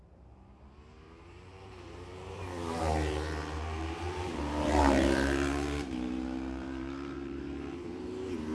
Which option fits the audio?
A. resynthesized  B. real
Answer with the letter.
A